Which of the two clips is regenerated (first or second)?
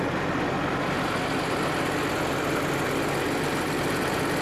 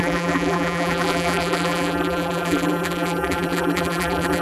second